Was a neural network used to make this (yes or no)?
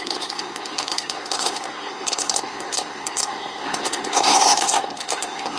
yes